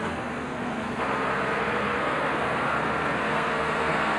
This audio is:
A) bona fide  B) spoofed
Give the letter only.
B